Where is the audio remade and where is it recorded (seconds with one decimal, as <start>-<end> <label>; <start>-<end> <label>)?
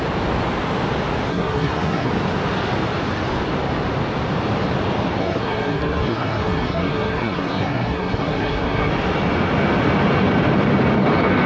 0.0-1.3 recorded; 1.3-2.1 remade; 2.1-5.2 recorded; 5.2-8.9 remade; 8.9-11.5 recorded